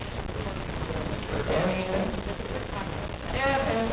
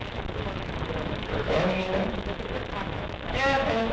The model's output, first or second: second